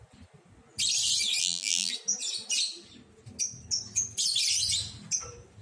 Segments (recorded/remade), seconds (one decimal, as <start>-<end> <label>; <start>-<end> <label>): 0.0-1.4 recorded; 1.4-1.9 remade; 1.9-5.6 recorded